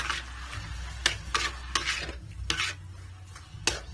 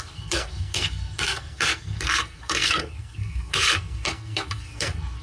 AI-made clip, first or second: second